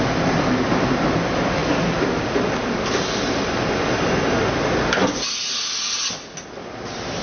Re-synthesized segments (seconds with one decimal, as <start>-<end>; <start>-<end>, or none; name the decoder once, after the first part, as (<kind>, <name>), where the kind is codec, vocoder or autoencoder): none